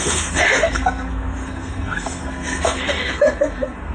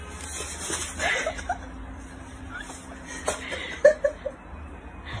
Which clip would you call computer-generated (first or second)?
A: first